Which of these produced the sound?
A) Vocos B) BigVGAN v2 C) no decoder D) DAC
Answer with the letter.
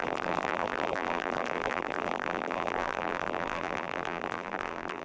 B